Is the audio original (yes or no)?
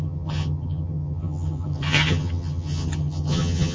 no